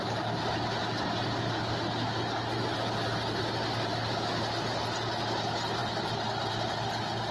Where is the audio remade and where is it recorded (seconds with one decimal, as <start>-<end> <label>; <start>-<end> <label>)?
0.0-7.3 recorded